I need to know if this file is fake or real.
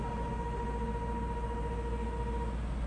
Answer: real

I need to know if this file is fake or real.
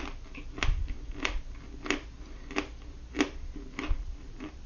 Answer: real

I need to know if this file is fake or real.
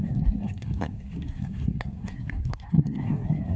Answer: fake